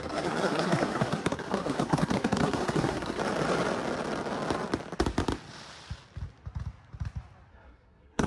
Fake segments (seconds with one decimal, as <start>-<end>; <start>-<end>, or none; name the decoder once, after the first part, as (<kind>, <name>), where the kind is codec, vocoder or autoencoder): 0.0-3.2 (codec, SNAC); 7.5-8.3